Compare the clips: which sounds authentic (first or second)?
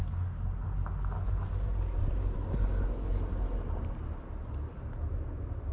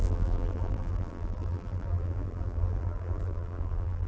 first